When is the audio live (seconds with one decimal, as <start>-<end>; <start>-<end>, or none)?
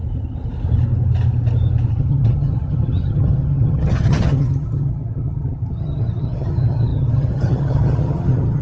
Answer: 0.0-1.9